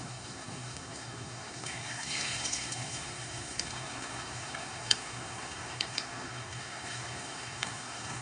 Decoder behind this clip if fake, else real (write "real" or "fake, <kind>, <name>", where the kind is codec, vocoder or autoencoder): fake, codec, SNAC